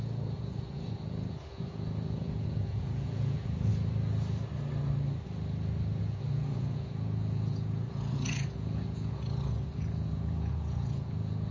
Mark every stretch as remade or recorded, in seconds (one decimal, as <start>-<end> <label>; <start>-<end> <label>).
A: 0.0-3.7 remade; 3.7-6.0 recorded; 6.0-11.5 remade